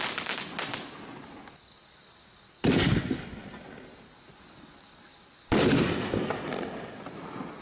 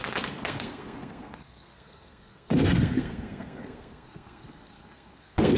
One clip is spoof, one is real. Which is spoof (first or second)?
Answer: second